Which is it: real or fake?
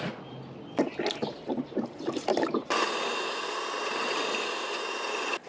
real